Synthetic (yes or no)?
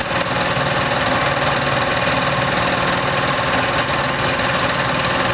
no